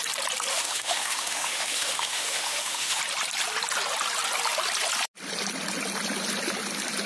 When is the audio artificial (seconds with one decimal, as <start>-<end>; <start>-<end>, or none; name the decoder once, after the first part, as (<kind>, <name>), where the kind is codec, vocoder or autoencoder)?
0.5-3.0 (autoencoder, DAC-VAE)